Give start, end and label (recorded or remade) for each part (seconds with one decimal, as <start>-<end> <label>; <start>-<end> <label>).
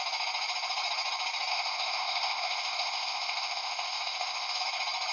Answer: 0.0-1.5 recorded; 1.5-4.6 remade; 4.6-5.1 recorded